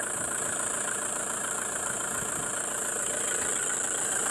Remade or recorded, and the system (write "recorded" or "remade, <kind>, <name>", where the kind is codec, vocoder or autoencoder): recorded